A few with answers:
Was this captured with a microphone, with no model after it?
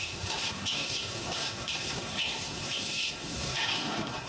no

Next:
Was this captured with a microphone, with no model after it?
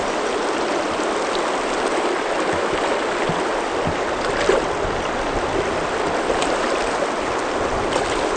yes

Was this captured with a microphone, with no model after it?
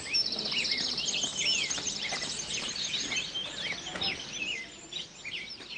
yes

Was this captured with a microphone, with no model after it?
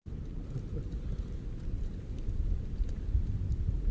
yes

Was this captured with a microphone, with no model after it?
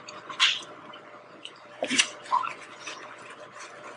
no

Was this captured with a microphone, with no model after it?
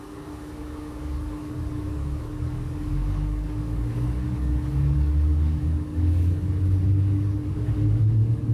no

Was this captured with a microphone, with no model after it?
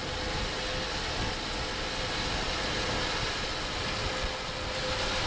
yes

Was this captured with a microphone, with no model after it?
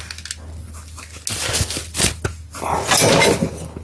yes